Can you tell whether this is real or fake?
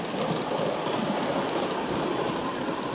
real